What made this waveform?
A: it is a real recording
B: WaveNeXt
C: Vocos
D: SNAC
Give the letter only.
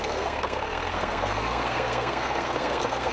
D